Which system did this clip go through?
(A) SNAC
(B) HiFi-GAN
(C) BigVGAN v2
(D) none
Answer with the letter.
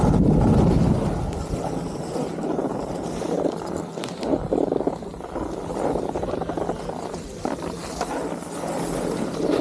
D